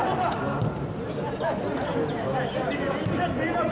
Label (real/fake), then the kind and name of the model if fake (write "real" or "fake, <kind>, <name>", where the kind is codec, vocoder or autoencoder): real